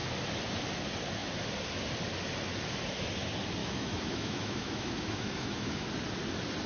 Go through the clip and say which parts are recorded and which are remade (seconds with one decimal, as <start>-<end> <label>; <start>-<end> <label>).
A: 0.0-3.6 recorded; 3.6-5.9 remade; 5.9-6.7 recorded